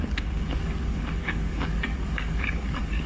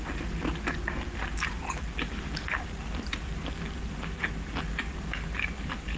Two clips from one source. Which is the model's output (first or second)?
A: first